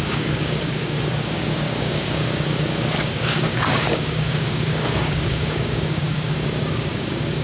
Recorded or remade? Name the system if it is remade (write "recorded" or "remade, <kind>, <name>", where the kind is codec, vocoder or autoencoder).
remade, codec, DAC